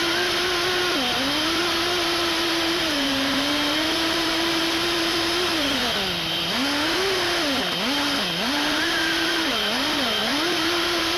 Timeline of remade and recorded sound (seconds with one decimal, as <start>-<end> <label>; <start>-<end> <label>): 0.0-2.5 recorded; 2.5-5.8 remade; 5.8-8.3 recorded; 8.3-11.2 remade